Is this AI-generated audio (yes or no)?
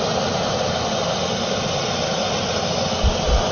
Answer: no